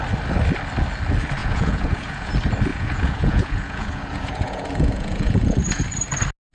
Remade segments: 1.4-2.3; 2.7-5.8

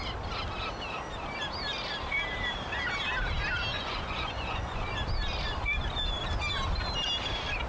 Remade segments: 3.7-4.9

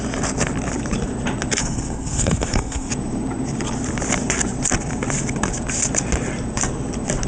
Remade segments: 1.6-2.9